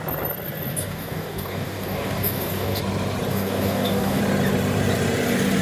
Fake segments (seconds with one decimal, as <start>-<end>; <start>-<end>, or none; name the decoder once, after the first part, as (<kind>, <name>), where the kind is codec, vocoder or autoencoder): 0.7-2.8 (codec, DAC); 3.3-4.2